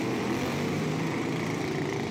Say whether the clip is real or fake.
real